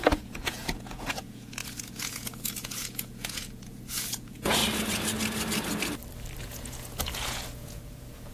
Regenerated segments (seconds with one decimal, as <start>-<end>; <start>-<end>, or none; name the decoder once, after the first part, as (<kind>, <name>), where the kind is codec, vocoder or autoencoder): 0.0-4.6 (vocoder, Vocos); 6.4-8.3